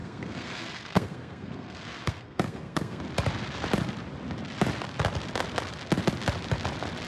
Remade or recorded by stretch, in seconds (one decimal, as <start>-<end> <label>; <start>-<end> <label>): 0.0-3.0 remade; 3.0-7.1 recorded